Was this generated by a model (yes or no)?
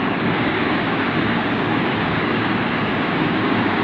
yes